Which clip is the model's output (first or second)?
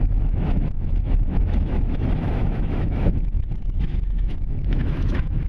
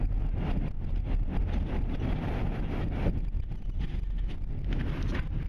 first